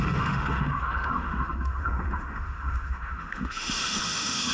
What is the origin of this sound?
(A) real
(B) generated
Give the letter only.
B